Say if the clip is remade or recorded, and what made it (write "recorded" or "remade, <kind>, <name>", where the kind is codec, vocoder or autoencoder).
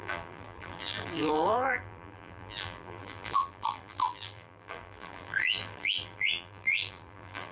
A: remade, vocoder, BigVGAN v2